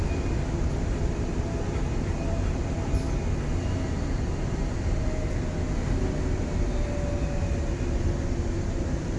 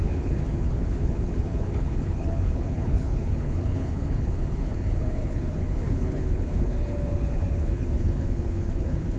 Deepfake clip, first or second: second